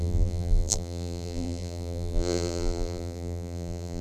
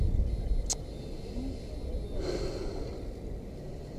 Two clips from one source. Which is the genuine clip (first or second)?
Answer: second